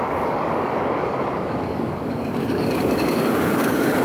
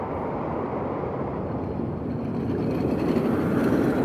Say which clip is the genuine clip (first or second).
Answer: second